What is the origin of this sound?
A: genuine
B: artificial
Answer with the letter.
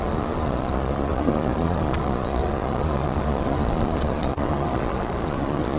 B